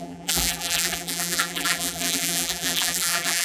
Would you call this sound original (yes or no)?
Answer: no